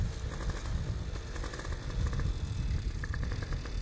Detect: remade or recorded recorded